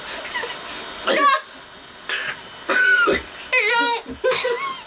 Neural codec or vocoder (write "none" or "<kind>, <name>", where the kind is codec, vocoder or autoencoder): none